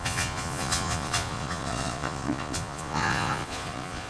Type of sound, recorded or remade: remade